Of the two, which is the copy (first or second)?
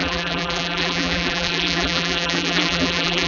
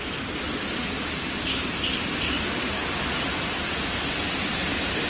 first